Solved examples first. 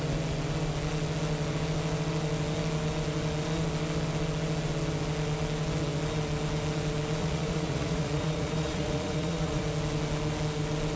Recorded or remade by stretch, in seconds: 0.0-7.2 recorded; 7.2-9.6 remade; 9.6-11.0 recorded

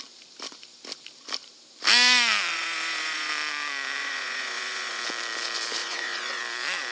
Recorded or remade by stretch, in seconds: 0.0-2.5 recorded; 2.5-3.3 remade; 3.3-4.0 recorded; 4.0-5.0 remade; 5.0-5.8 recorded; 5.8-6.4 remade; 6.4-6.9 recorded

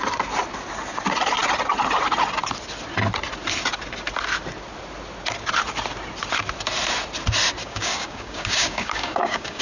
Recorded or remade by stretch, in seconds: 0.0-7.6 recorded; 7.6-9.6 remade

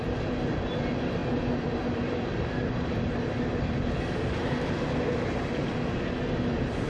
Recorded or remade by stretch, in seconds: 0.0-6.9 recorded

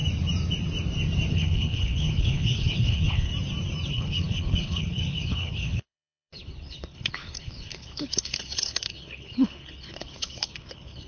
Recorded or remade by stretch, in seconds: 0.0-1.3 recorded; 1.3-3.3 remade; 3.3-3.9 recorded; 3.9-11.1 remade

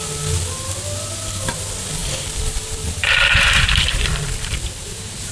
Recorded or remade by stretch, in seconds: 0.0-2.0 recorded; 2.0-5.3 remade